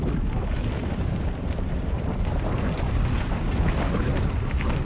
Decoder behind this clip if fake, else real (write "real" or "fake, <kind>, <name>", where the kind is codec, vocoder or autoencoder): real